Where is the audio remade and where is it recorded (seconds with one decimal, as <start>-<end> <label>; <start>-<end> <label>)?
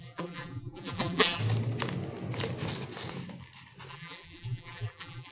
0.0-1.4 remade; 1.4-3.9 recorded; 3.9-5.3 remade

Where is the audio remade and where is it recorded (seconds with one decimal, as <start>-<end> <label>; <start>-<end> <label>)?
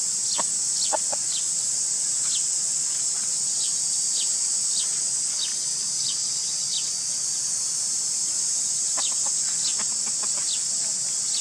0.0-11.4 recorded